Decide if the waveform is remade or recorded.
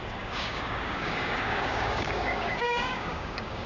remade